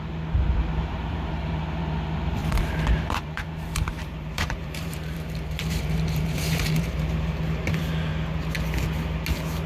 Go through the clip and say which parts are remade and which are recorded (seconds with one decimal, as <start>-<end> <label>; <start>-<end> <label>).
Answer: 0.0-8.1 remade; 8.1-9.7 recorded